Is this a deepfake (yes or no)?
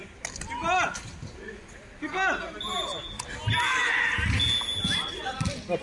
no